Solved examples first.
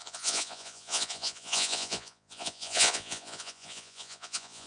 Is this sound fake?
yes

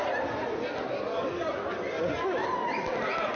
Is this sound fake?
no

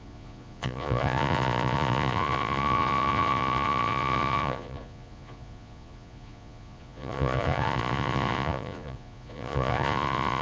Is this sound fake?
yes